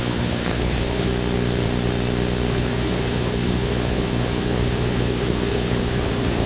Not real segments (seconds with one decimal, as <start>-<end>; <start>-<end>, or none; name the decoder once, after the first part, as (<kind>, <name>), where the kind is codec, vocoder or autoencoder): 0.0-1.1 (codec, HILCodec); 2.5-6.5